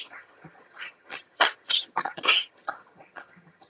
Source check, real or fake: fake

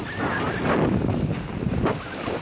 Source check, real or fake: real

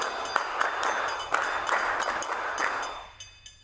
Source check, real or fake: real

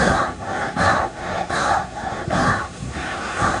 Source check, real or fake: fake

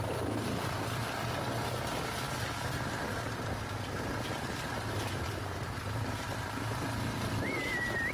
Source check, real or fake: fake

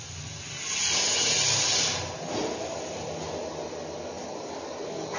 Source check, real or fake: real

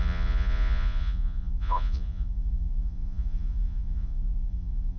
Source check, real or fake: fake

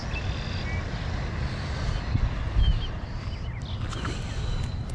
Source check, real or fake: real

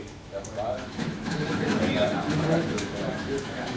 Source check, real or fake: fake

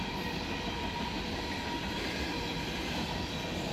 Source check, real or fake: real